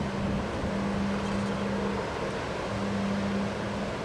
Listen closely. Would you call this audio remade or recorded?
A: recorded